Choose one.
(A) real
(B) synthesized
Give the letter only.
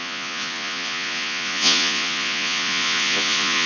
B